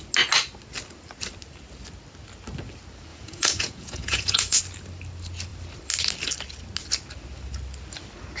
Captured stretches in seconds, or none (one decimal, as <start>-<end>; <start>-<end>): 0.0-3.1; 4.6-8.4